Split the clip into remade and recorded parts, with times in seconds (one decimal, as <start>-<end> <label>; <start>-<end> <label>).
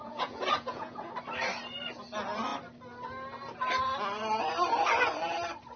0.0-1.1 remade; 1.1-5.8 recorded